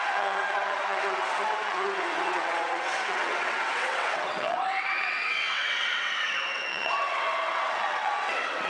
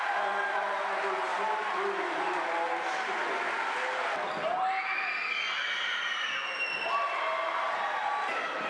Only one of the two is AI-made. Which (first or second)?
first